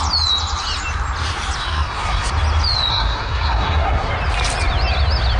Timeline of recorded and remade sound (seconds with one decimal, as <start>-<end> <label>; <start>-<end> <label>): 0.0-1.6 recorded; 1.6-2.3 remade; 2.3-2.9 recorded; 2.9-4.1 remade; 4.1-5.4 recorded